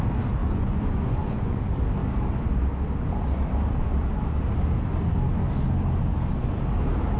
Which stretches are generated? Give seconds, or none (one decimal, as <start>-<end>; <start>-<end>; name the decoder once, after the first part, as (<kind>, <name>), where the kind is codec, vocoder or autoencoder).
0.4-1.6 (vocoder, Vocos)